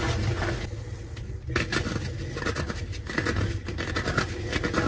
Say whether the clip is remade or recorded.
recorded